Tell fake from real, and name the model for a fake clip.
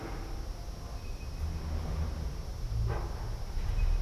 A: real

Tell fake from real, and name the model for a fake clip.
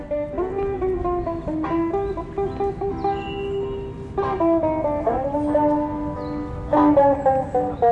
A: real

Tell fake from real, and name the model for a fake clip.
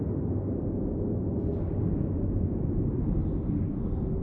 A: real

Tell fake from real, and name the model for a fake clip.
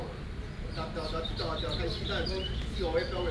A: real